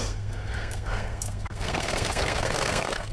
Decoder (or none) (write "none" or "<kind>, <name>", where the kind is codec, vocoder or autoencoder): codec, SNAC